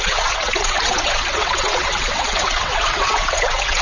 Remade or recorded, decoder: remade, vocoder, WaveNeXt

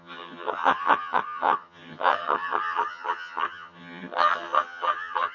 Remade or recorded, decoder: remade, vocoder, HiFi-GAN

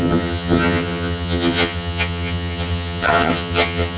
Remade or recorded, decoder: remade, vocoder, HiFi-GAN